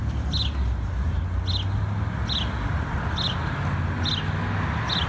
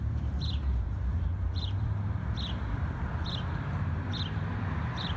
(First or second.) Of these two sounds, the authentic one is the first